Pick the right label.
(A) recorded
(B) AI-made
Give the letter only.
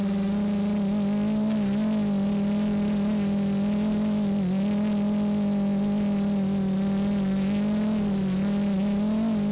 A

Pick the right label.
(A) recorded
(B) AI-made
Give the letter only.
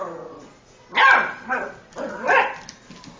A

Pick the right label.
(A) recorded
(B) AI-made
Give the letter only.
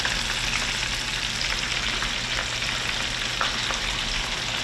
A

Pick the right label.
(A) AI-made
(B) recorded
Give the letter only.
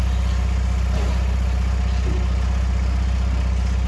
B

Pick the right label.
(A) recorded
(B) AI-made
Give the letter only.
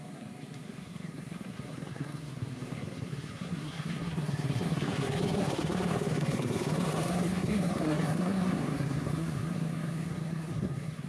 B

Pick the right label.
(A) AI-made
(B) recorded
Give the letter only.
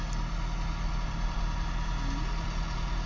B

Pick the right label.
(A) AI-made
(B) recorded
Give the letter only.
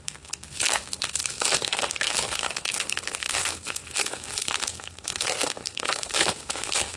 A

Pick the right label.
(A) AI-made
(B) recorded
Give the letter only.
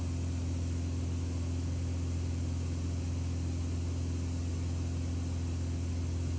B